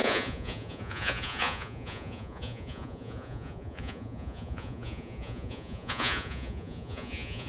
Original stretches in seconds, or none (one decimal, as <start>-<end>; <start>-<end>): none